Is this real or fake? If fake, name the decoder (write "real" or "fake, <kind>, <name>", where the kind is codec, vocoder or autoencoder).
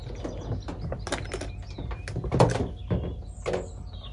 real